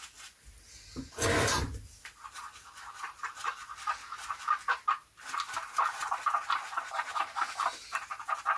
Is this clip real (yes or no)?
yes